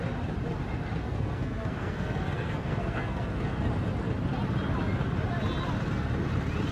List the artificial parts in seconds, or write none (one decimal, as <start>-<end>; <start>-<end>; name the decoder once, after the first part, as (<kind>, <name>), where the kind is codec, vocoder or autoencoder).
1.0-3.6 (codec, SNAC)